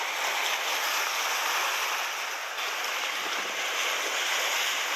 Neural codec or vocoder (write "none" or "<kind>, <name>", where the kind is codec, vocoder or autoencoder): none